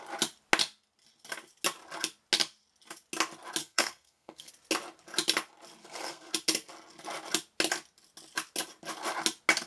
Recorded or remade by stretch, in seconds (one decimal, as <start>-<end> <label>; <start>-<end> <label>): 0.0-3.6 recorded; 3.6-4.5 remade; 4.5-5.8 recorded; 5.8-6.3 remade; 6.3-9.7 recorded